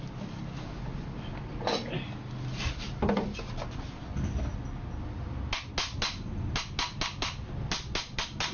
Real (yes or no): yes